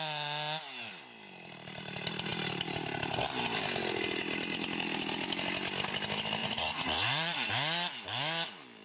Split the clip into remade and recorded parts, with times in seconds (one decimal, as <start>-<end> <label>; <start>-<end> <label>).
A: 0.0-6.4 recorded; 6.4-7.5 remade; 7.5-8.8 recorded